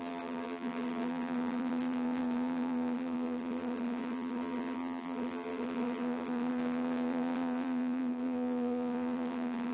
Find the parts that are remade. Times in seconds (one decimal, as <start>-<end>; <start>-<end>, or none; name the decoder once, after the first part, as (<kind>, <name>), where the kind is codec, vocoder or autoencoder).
0.0-9.7 (vocoder, BigVGAN v2)